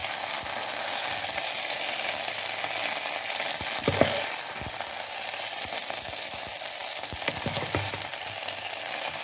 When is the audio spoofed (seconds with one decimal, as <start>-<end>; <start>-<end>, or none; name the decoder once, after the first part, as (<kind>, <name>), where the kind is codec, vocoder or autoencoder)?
none